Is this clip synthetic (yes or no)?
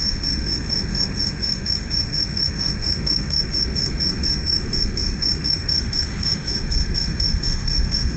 yes